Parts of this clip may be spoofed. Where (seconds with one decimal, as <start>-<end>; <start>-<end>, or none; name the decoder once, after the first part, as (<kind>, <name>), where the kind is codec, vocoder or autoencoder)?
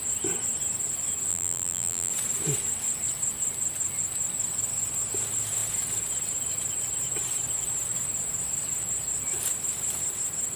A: 1.3-2.1 (vocoder, BigVGAN v2)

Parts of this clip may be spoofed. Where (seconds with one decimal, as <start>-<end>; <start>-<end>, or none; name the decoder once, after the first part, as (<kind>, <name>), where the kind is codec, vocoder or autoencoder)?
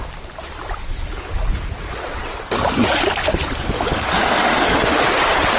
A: none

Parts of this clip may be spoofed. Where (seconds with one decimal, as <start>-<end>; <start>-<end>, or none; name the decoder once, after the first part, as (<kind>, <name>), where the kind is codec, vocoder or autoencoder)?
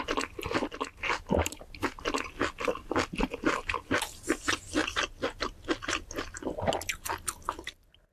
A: 4.8-6.1 (vocoder, BigVGAN v2)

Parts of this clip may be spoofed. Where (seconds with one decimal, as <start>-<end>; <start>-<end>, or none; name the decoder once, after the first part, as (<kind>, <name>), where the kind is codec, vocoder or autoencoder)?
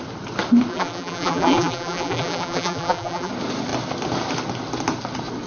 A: 0.7-3.3 (vocoder, BigVGAN v2)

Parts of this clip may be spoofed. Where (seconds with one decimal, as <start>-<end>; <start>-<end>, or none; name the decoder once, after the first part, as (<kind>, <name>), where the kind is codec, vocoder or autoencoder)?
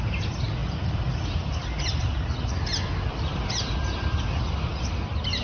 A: 3.1-3.7 (vocoder, BigVGAN v2)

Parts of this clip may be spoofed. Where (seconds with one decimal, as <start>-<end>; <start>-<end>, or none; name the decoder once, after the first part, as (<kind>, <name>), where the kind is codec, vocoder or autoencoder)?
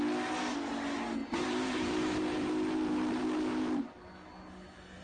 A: 1.2-3.8 (vocoder, BigVGAN v2)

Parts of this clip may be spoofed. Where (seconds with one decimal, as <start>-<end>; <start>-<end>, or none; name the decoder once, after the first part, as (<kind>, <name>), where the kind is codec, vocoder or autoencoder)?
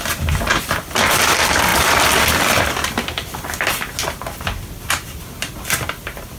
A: 0.0-0.5 (vocoder, BigVGAN v2); 1.0-6.4